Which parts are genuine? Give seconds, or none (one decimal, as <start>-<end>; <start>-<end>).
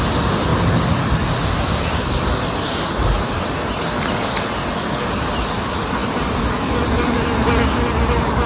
0.0-8.5